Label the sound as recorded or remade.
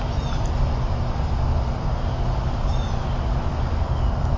remade